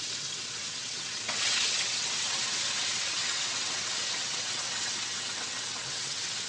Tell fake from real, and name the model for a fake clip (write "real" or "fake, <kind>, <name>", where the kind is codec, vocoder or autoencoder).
fake, vocoder, WaveNeXt